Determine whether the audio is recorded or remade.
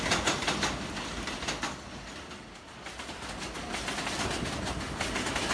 recorded